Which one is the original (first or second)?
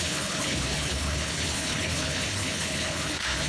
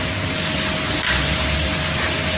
second